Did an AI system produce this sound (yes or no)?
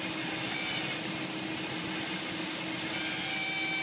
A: no